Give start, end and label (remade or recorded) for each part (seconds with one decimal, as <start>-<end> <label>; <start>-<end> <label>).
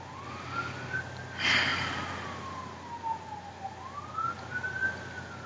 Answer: 0.0-5.5 recorded